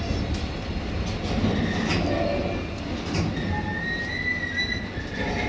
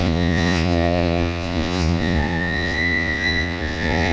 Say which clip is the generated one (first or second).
second